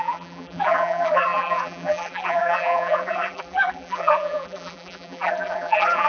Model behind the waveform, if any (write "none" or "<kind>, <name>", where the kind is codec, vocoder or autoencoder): vocoder, BigVGAN v2